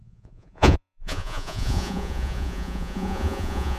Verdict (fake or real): fake